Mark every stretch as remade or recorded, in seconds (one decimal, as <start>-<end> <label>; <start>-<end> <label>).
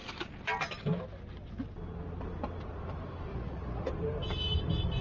0.0-3.3 recorded; 3.3-3.9 remade; 3.9-5.0 recorded